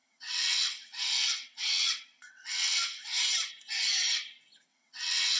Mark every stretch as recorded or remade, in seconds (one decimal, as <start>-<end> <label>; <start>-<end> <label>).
0.0-3.2 remade; 3.2-4.7 recorded; 4.7-5.4 remade